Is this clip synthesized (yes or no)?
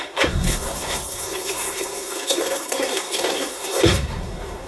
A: yes